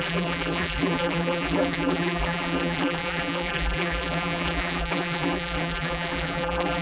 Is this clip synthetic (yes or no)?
yes